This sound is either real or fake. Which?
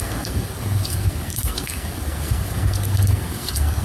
fake